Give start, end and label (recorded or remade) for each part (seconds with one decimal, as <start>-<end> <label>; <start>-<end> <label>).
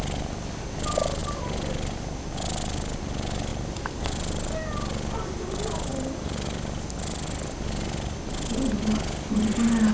0.0-3.5 recorded; 3.5-4.0 remade; 4.0-9.9 recorded